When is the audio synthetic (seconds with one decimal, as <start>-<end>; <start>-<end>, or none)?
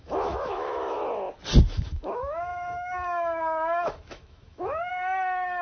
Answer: 0.0-1.0; 1.6-5.6